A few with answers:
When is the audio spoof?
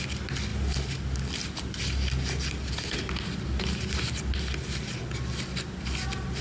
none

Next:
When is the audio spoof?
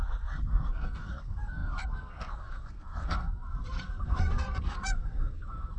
0.0-5.8 (codec, SNAC)